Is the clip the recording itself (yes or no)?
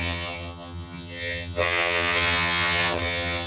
no